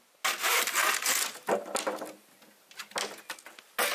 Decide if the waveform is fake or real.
real